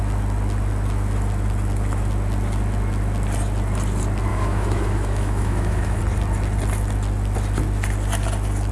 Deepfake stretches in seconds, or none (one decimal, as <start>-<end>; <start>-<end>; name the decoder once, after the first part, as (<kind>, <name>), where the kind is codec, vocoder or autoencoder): 4.3-6.0 (autoencoder, DAC-VAE)